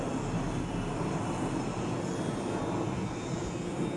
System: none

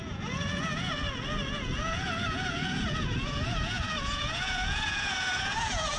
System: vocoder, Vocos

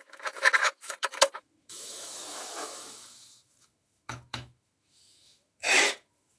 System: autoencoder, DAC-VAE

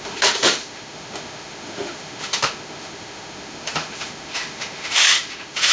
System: autoencoder, DAC-VAE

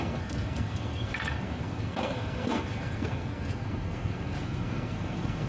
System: codec, SNAC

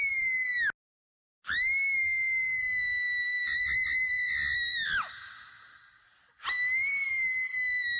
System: none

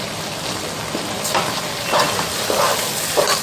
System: none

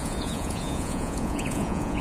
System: vocoder, Vocos